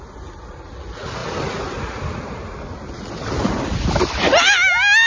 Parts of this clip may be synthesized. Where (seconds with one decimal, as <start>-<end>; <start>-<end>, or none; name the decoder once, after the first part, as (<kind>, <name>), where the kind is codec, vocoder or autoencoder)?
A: none